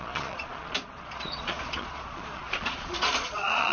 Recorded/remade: remade